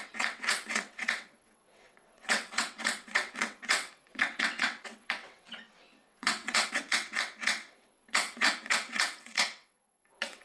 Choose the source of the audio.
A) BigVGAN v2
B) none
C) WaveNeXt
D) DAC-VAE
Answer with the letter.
C